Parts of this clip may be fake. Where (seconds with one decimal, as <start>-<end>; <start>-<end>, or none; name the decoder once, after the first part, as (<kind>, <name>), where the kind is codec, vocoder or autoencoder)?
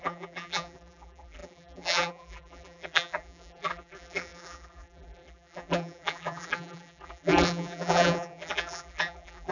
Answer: 0.0-9.5 (vocoder, BigVGAN v2)